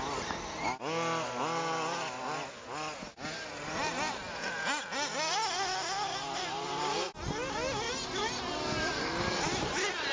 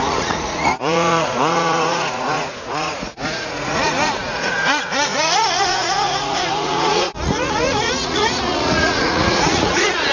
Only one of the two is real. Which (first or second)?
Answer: first